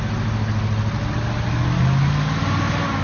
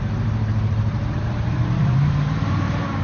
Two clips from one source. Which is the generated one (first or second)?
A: second